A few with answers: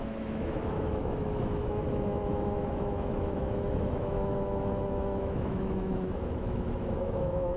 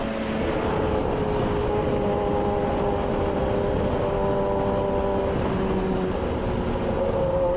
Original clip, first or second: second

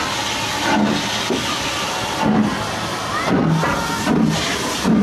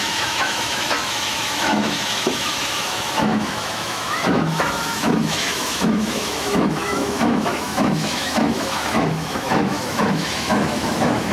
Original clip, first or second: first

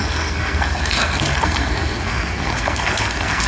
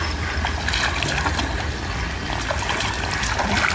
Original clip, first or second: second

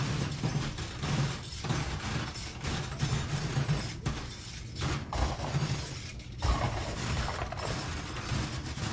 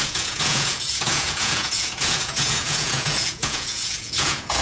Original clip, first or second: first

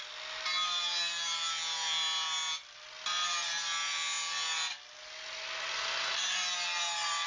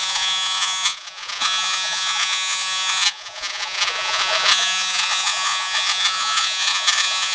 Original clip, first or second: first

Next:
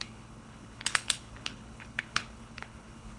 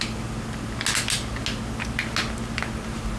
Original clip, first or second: second